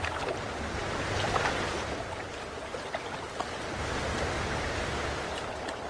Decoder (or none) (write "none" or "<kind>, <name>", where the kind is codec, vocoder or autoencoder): none